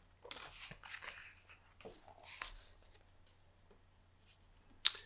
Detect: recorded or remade recorded